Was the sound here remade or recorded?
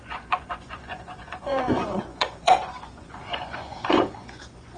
remade